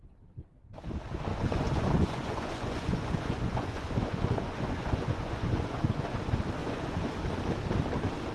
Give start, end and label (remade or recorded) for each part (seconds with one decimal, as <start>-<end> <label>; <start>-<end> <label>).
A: 0.0-1.3 recorded; 1.3-6.1 remade; 6.1-6.6 recorded; 6.6-7.2 remade; 7.2-8.3 recorded